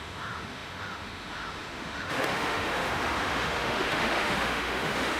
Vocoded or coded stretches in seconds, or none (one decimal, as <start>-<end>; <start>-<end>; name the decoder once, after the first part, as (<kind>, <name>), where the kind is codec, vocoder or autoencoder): 0.0-5.2 (autoencoder, DAC-VAE)